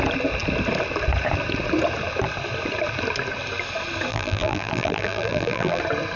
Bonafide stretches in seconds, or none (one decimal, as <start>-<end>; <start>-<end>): 0.0-4.1; 5.8-6.2